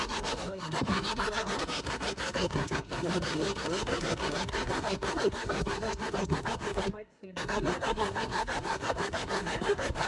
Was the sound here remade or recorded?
remade